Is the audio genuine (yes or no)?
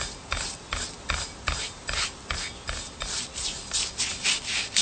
yes